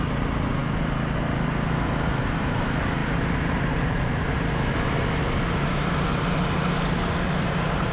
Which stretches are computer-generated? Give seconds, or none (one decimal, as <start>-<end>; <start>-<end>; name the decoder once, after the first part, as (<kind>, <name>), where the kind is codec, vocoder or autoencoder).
none